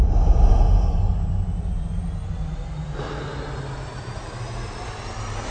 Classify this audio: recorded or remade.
recorded